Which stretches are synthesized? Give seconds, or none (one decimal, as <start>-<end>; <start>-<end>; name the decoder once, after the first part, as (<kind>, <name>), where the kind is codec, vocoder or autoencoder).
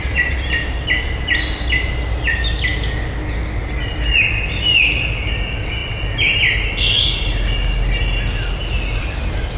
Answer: none